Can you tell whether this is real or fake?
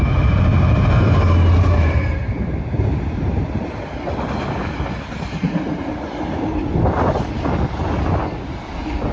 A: real